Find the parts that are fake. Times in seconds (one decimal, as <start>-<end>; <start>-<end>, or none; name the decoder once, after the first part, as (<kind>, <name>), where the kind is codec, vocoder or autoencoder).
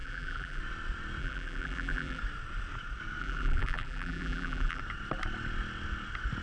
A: 0.0-0.6 (vocoder, BigVGAN v2); 1.2-2.2; 3.2-4.8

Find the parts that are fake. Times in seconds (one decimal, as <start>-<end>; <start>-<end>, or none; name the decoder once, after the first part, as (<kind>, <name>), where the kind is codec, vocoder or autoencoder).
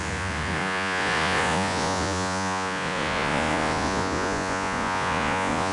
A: 0.0-5.7 (vocoder, Vocos)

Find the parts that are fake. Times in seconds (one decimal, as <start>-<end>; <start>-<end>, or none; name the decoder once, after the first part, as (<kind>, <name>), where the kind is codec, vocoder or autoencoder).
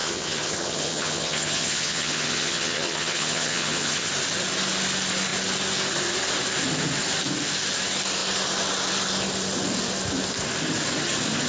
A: 0.0-4.1 (vocoder, HiFi-GAN)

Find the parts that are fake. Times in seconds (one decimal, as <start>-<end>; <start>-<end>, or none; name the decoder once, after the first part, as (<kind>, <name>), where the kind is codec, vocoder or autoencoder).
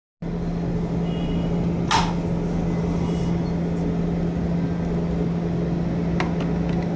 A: none